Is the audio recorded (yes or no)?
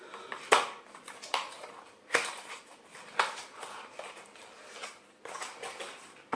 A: no